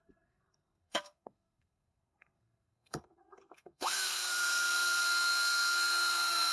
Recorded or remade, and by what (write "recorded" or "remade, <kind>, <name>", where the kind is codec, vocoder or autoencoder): remade, codec, SNAC